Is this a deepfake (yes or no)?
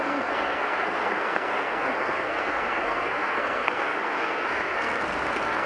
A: yes